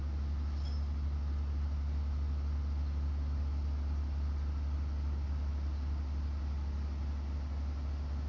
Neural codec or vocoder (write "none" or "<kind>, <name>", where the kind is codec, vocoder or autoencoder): none